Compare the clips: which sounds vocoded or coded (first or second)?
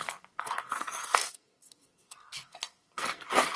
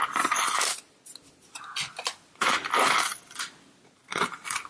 first